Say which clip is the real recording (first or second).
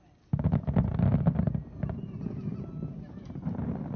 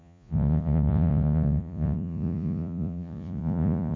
first